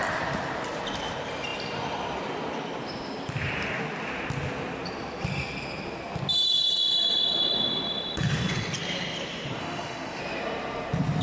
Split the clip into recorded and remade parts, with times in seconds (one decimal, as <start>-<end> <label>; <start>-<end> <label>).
0.0-9.6 recorded; 9.6-10.2 remade; 10.2-11.2 recorded